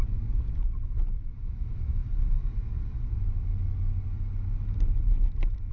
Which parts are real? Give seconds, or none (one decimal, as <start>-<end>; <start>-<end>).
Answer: 2.0-5.7